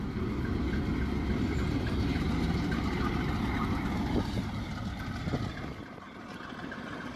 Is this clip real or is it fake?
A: real